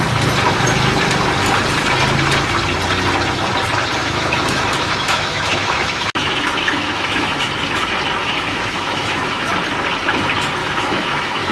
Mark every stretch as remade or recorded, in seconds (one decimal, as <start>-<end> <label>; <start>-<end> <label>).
0.0-4.0 recorded; 4.0-7.5 remade; 7.5-8.2 recorded; 8.2-9.5 remade; 9.5-10.6 recorded; 10.6-11.5 remade